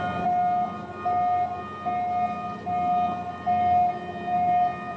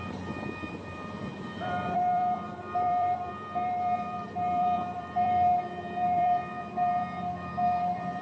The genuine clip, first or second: first